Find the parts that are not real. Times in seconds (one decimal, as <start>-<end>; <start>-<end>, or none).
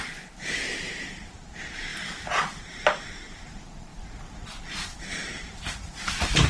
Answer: 0.0-1.9; 2.6-6.5